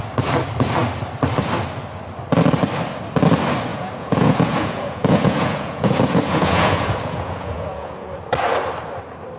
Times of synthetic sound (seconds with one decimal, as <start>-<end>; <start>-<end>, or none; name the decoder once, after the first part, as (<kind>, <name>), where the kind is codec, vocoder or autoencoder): 3.7-8.2 (vocoder, Vocos)